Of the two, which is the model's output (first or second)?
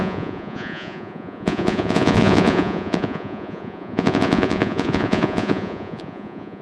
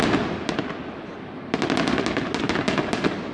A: first